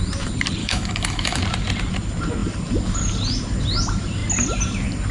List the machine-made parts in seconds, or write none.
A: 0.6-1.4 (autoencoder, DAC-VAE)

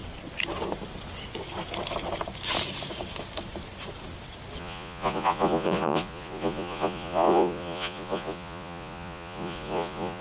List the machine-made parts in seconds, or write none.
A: 4.6-10.2 (vocoder, Vocos)

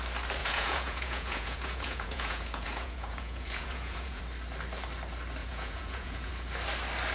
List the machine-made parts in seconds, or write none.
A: 0.4-4.2 (vocoder, Vocos); 5.4-6.3

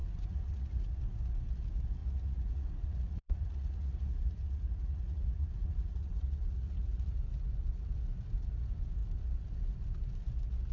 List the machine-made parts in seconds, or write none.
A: 0.0-1.0 (vocoder, Vocos); 2.0-7.2

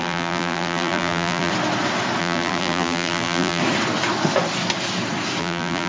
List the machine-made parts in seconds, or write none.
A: 0.0-1.5 (vocoder, BigVGAN v2); 2.2-3.6; 5.4-5.9

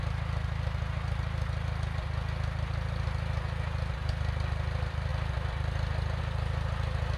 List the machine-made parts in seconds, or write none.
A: none

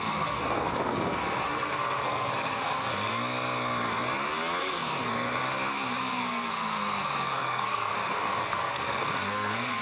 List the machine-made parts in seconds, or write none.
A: 0.0-3.1 (codec, SNAC); 4.6-5.4; 6.0-9.8

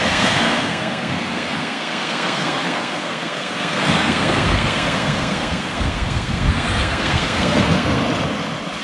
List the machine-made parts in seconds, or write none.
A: 0.0-8.0 (codec, SNAC)